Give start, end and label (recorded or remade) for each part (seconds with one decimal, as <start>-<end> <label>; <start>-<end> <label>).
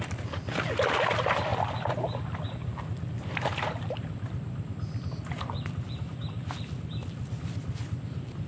0.0-8.5 recorded